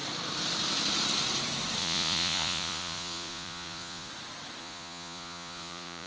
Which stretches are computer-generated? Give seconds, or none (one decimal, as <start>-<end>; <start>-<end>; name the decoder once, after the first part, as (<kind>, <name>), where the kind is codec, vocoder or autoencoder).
1.8-4.1 (vocoder, Vocos); 4.6-6.1